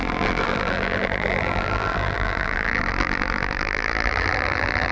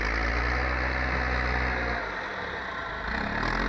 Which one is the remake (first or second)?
first